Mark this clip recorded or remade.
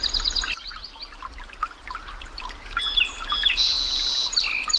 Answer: recorded